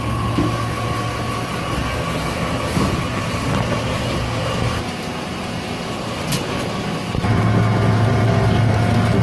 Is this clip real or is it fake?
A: real